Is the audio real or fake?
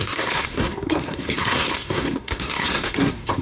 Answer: fake